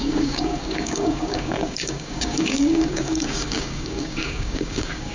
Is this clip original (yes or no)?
no